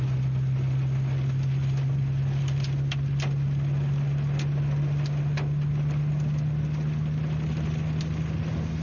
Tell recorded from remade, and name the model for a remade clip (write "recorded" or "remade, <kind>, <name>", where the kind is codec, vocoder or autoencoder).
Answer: recorded